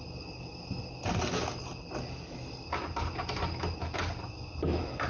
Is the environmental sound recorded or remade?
recorded